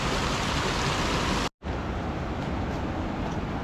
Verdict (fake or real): real